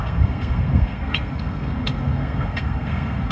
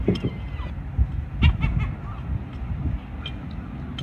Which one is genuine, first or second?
second